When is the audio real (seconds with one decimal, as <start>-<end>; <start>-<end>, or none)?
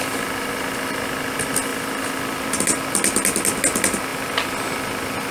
0.0-1.7; 2.2-4.1; 4.7-5.3